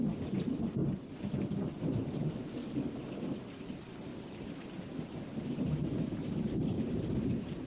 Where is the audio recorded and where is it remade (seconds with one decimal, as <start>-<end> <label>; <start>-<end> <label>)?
0.0-0.8 remade; 0.8-2.1 recorded; 2.1-2.6 remade; 2.6-3.6 recorded; 3.6-7.7 remade